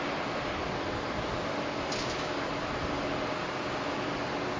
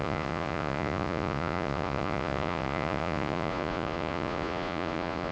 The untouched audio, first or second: first